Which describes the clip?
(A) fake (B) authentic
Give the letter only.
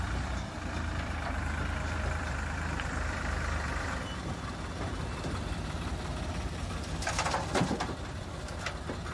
A